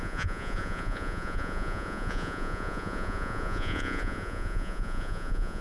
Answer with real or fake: fake